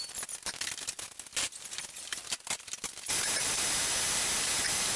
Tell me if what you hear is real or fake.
real